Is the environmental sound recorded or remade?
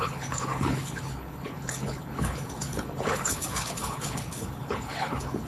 remade